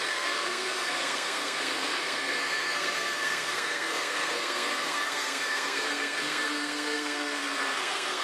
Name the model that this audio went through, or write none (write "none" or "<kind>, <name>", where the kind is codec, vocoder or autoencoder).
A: codec, SNAC